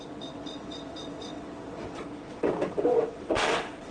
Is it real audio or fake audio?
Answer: fake